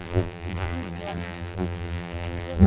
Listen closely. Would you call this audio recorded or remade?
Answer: remade